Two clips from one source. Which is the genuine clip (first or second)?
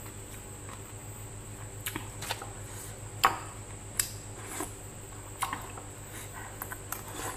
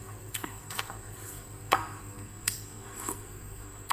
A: first